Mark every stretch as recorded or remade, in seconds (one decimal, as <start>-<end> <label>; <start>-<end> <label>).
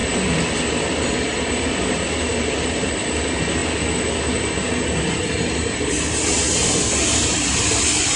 0.0-2.3 recorded; 2.3-2.9 remade; 2.9-8.2 recorded